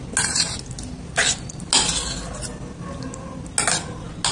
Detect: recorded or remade recorded